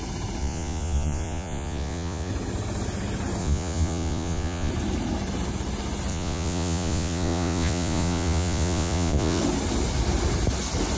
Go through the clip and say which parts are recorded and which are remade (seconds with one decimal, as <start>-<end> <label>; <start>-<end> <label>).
0.0-0.4 recorded; 0.4-2.3 remade; 2.3-3.4 recorded; 3.4-4.7 remade; 4.7-6.1 recorded; 6.1-9.4 remade; 9.4-11.0 recorded